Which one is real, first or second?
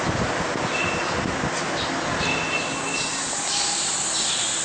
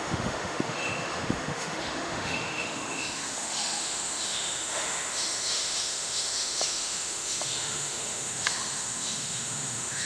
first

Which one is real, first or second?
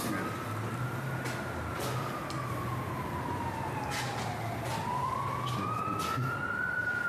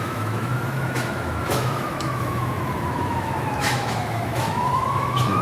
first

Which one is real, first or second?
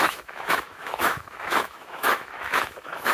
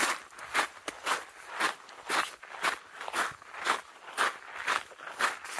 second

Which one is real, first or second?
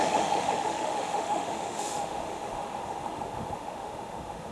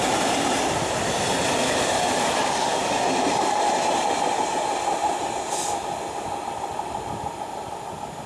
second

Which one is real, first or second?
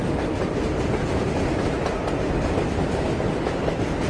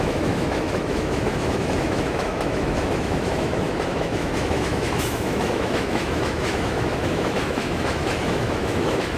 first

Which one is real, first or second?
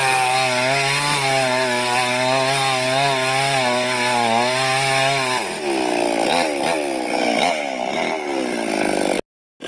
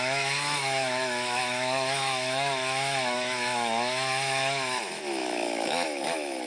first